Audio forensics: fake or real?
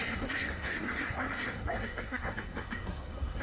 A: fake